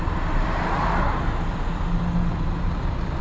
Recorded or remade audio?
recorded